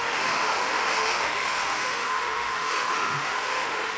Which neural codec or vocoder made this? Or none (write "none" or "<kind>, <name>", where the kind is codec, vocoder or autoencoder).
autoencoder, DAC-VAE